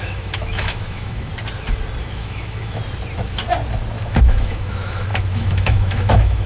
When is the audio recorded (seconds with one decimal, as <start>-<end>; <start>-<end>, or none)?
1.3-2.0; 2.8-4.0